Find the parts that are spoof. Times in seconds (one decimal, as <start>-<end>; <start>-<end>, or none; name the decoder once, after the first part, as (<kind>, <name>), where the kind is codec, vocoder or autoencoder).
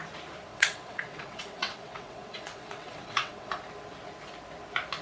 0.5-3.5 (vocoder, WaveNeXt)